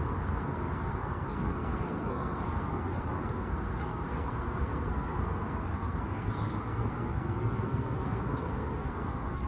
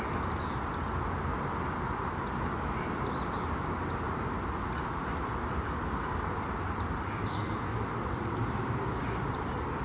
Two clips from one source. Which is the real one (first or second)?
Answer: second